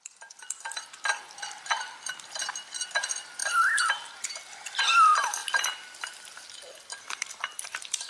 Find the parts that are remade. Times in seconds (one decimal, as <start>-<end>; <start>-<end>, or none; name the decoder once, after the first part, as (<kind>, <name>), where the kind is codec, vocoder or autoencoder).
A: 0.0-2.4 (vocoder, BigVGAN v2); 2.9-5.4; 7.3-8.1